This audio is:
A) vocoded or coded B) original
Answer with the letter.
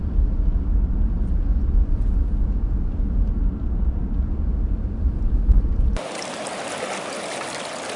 B